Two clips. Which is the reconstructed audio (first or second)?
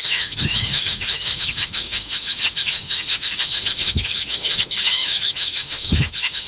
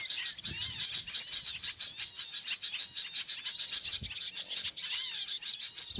first